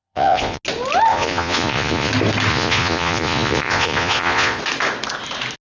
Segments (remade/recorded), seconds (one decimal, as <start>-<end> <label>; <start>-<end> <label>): 0.0-0.6 remade; 0.6-1.1 recorded; 1.1-2.1 remade; 2.1-2.5 recorded; 2.5-4.6 remade; 4.6-5.6 recorded